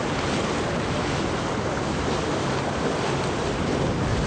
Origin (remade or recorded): recorded